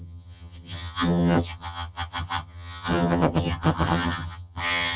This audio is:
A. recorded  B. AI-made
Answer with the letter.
B